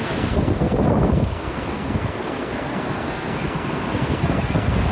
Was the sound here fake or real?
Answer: fake